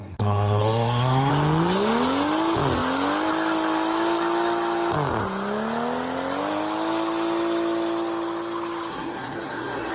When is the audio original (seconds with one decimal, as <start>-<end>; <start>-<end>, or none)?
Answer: 1.3-8.9